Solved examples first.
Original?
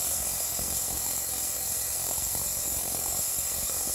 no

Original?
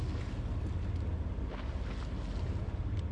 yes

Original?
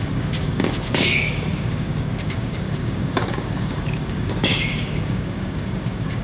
no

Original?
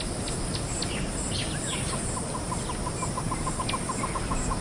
yes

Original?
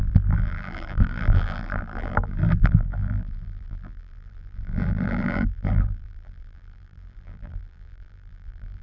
no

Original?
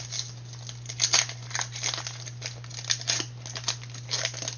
yes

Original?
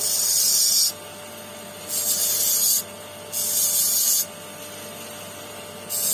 yes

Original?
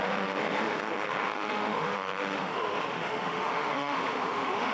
no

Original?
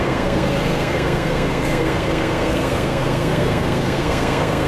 no